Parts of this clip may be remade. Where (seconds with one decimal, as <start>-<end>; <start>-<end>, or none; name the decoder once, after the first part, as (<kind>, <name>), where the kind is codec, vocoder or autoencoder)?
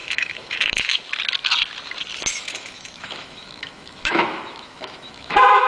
0.0-1.0 (autoencoder, DAC-VAE); 2.3-5.7